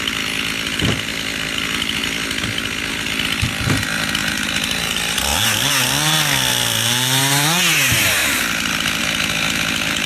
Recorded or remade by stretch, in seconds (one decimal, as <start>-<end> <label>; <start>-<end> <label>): 0.0-10.1 recorded